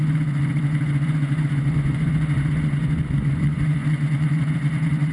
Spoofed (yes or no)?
yes